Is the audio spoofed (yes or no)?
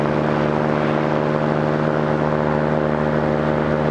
no